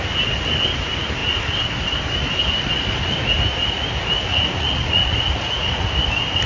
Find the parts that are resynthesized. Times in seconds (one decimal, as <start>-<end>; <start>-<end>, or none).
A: 4.3-5.9